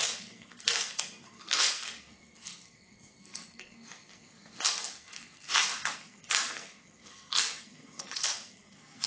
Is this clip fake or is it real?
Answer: fake